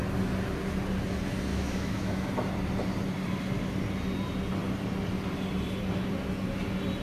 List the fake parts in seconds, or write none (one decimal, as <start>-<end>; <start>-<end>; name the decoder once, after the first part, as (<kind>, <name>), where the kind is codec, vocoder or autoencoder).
1.5-2.3 (autoencoder, DAC-VAE)